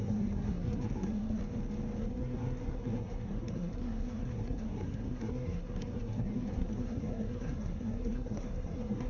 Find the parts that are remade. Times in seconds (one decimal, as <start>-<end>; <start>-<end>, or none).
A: 0.0-1.4; 2.0-9.1